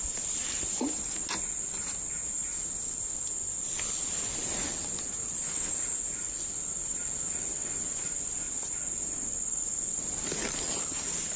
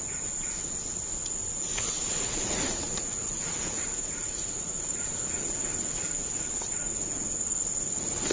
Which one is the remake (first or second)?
second